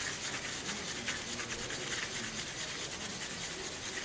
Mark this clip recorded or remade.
recorded